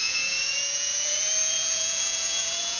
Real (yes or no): no